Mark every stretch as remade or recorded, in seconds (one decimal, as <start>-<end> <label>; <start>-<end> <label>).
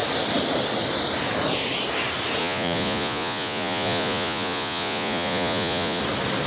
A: 0.0-2.4 recorded; 2.4-6.0 remade; 6.0-6.5 recorded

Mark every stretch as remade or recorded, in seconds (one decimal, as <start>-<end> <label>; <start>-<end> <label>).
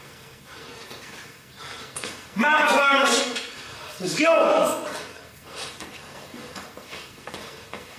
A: 0.0-8.0 remade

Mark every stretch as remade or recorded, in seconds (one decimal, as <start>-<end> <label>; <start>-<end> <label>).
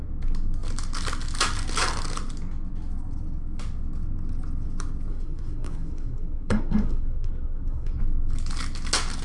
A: 0.0-5.1 recorded; 5.1-8.0 remade; 8.0-9.2 recorded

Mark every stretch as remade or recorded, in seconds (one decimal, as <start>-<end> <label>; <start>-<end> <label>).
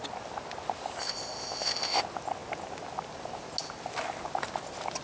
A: 0.0-1.0 recorded; 1.0-2.0 remade; 2.0-5.0 recorded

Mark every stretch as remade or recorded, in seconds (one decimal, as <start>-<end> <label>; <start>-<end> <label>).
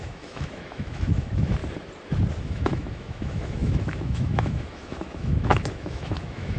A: 0.0-1.6 remade; 1.6-2.4 recorded; 2.4-6.6 remade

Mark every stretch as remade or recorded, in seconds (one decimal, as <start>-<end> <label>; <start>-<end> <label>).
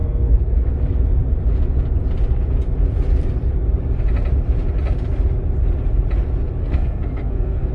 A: 0.0-0.7 remade; 0.7-6.6 recorded; 6.6-7.7 remade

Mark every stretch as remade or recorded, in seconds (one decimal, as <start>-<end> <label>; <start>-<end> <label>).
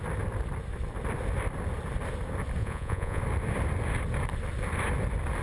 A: 0.0-2.6 recorded; 2.6-3.2 remade; 3.2-5.4 recorded